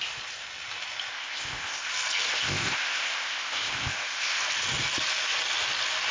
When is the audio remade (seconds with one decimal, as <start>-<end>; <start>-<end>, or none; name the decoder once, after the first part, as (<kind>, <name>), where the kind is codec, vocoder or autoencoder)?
1.1-1.9 (codec, ZipCodec); 2.3-4.4